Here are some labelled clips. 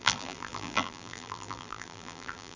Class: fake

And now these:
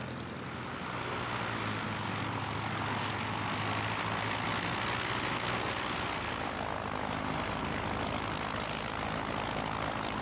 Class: real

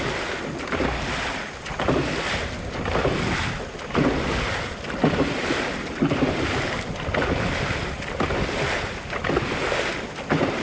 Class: real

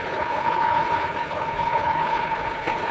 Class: fake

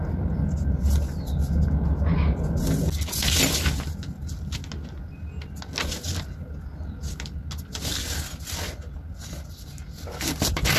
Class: real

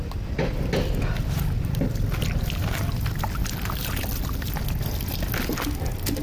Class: real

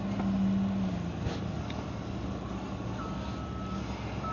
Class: real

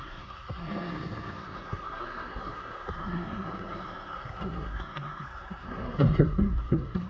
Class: fake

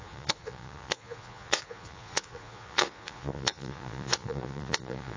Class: fake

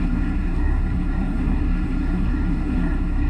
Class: fake